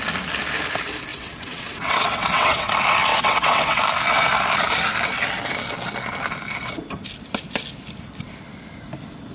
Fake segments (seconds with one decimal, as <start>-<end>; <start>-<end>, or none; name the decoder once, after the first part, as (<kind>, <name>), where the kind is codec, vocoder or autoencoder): 1.1-2.7 (vocoder, WaveNeXt); 3.1-3.8